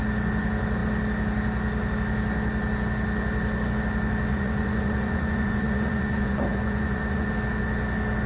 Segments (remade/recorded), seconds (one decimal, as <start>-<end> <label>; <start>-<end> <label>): 0.0-4.3 recorded; 4.3-7.3 remade; 7.3-8.3 recorded

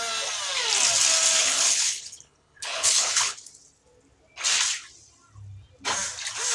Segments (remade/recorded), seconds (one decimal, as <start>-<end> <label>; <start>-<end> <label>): 0.0-1.4 recorded; 1.4-3.5 remade; 3.5-6.5 recorded

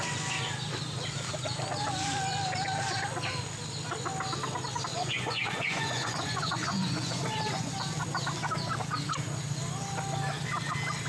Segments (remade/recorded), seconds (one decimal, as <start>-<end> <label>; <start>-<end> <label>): 0.0-4.9 recorded; 4.9-7.7 remade; 7.7-11.1 recorded

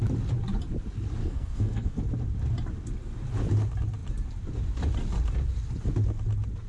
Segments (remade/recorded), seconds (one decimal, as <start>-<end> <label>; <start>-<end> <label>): 0.0-1.2 recorded; 1.2-2.0 remade; 2.0-6.7 recorded